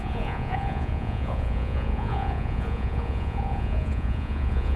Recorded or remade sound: remade